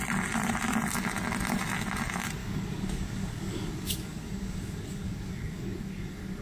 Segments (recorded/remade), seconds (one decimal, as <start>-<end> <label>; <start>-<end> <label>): 0.0-2.4 recorded; 2.4-6.4 remade